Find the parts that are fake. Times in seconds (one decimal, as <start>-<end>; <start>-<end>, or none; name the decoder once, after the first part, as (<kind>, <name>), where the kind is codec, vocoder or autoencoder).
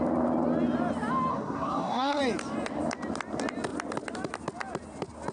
1.3-2.2 (codec, SNAC)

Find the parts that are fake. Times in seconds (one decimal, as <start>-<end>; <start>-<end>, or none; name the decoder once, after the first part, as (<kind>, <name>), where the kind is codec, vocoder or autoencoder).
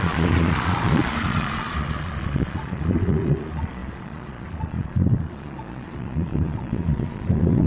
0.0-7.7 (vocoder, Vocos)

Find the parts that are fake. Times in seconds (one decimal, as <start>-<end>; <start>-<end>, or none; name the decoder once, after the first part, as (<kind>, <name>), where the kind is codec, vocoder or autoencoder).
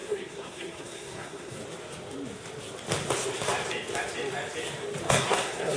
0.0-1.6 (codec, SNAC); 5.1-5.8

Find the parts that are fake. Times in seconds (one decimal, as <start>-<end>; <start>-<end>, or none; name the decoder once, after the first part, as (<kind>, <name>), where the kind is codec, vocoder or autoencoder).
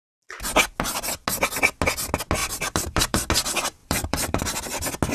2.4-3.3 (vocoder, BigVGAN v2); 3.8-4.4